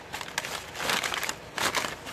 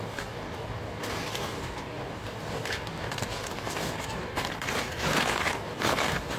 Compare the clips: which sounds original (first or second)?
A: first